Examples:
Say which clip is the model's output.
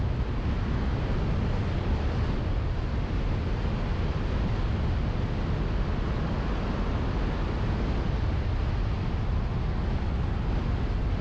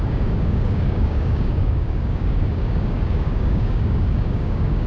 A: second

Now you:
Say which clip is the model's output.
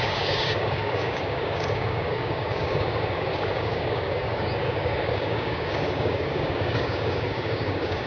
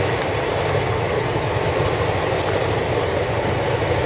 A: first